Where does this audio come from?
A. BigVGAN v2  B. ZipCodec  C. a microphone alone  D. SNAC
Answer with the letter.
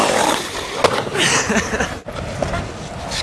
C